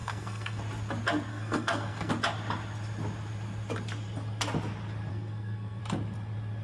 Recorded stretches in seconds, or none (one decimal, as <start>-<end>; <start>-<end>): 0.6-1.3; 2.1-5.1; 5.8-6.6